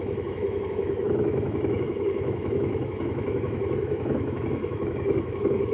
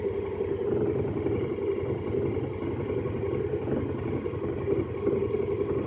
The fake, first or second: first